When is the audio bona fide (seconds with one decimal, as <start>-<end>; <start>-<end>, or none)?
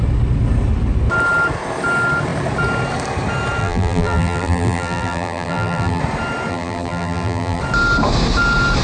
0.0-3.6; 6.0-6.5; 7.6-8.8